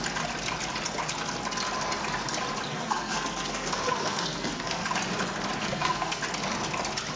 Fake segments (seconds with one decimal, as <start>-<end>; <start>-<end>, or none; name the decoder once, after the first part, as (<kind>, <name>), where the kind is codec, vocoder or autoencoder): 2.7-4.9 (codec, SNAC); 5.6-6.2